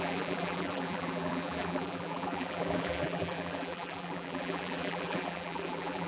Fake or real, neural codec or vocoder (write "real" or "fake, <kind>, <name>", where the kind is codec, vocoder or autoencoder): fake, vocoder, BigVGAN v2